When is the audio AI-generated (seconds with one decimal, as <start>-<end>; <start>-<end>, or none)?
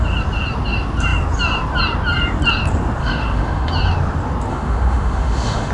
3.0-3.7; 4.5-5.7